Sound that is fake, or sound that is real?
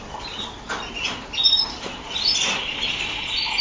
real